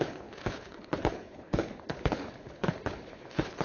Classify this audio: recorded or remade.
remade